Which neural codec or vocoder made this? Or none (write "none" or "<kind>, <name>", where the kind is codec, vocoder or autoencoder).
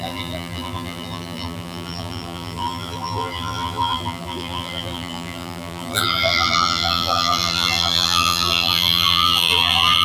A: vocoder, BigVGAN v2